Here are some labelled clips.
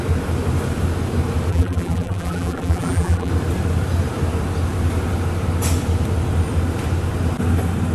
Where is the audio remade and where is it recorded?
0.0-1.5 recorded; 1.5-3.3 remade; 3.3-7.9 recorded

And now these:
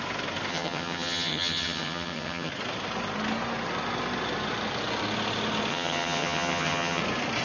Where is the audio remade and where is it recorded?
0.0-0.5 recorded; 0.5-2.5 remade; 2.5-5.7 recorded; 5.7-7.0 remade; 7.0-7.4 recorded

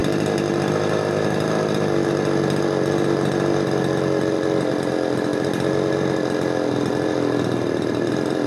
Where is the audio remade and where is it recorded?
0.0-8.5 recorded

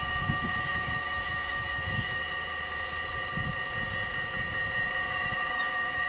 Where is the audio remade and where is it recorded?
0.0-2.2 remade; 2.2-5.1 recorded; 5.1-6.1 remade